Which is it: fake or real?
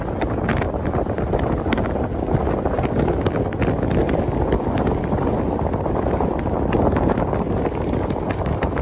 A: real